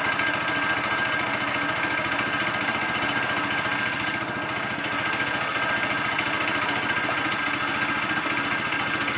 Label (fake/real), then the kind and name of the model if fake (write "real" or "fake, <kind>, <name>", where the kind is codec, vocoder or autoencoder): real